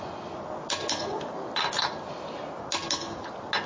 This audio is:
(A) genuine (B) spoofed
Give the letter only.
A